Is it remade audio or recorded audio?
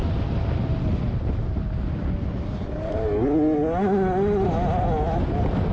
recorded